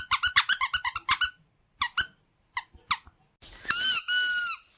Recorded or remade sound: recorded